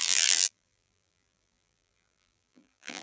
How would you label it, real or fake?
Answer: fake